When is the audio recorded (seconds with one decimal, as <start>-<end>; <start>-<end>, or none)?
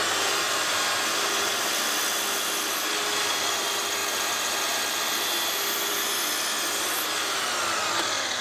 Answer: 0.0-8.4